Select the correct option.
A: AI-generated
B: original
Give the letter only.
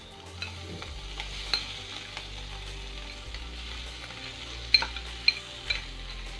B